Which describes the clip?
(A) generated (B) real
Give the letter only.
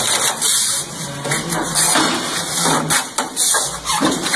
B